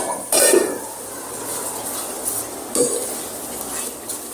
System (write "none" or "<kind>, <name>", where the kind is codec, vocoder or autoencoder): none